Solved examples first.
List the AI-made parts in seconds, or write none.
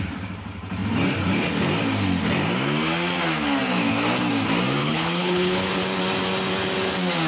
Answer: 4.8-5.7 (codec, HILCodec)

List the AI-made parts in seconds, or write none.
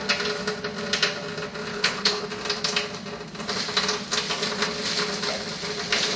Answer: 1.7-2.3 (codec, HILCodec)